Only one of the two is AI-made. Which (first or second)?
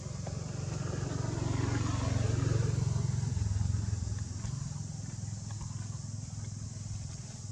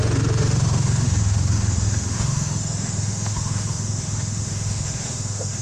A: second